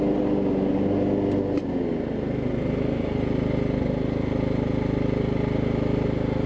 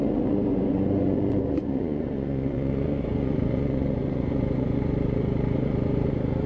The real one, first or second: first